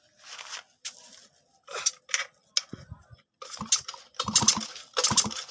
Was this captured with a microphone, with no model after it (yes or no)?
yes